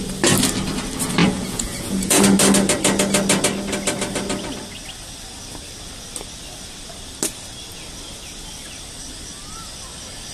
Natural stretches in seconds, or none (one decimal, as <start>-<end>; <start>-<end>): 0.0-1.2; 2.2-10.3